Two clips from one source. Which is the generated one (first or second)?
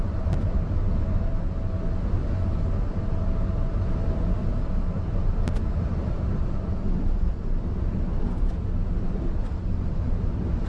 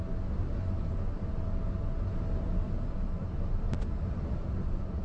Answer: first